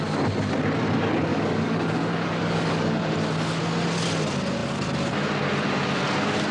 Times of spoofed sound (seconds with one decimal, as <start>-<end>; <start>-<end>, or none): 1.3-3.0